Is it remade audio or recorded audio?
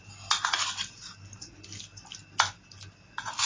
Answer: recorded